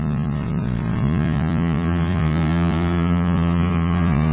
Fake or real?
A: fake